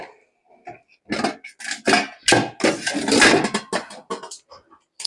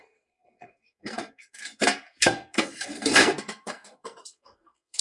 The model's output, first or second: second